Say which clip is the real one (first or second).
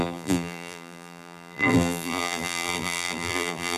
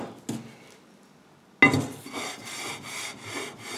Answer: second